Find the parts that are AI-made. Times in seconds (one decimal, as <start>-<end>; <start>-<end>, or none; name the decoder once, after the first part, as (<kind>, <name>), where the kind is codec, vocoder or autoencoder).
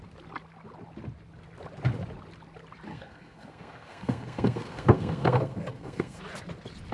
2.9-6.2 (codec, SNAC)